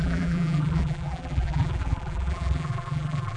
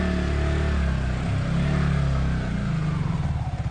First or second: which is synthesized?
first